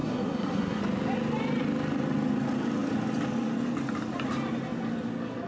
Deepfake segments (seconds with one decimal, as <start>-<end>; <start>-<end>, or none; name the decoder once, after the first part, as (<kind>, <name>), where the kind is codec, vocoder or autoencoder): 0.0-0.8 (codec, SNAC)